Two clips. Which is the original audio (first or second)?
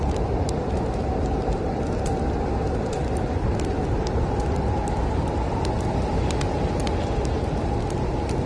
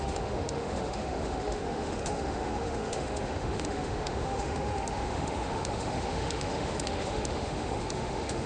first